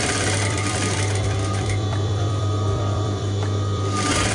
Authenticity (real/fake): fake